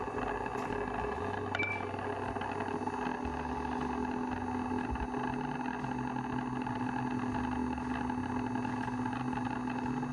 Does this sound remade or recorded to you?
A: recorded